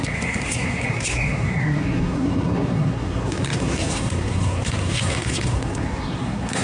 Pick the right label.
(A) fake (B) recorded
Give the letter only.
A